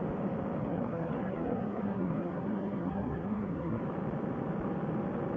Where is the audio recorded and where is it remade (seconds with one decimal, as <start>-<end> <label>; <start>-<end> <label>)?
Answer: 0.0-0.6 recorded; 0.6-3.8 remade; 3.8-5.4 recorded